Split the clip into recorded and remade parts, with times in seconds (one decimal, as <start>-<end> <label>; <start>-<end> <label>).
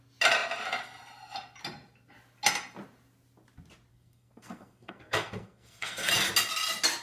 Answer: 0.0-3.9 recorded; 3.9-6.1 remade; 6.1-7.0 recorded